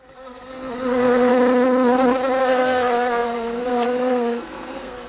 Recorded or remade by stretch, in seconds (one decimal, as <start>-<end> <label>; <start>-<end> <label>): 0.0-1.3 remade; 1.3-2.4 recorded; 2.4-5.1 remade